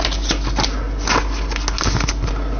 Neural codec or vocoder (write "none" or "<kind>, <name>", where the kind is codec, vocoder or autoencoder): none